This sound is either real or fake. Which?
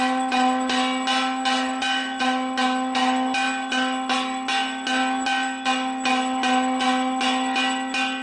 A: real